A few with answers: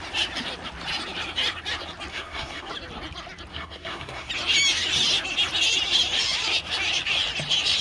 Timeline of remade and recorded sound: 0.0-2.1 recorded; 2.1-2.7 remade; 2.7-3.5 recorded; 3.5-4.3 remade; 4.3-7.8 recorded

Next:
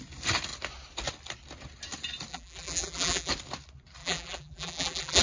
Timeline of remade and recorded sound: 0.0-2.3 recorded; 2.3-3.3 remade; 3.3-4.0 recorded; 4.0-5.2 remade